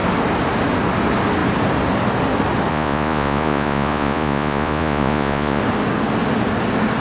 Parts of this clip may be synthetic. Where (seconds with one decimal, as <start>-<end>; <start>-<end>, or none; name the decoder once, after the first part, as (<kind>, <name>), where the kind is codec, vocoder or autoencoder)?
2.7-5.6 (vocoder, Vocos)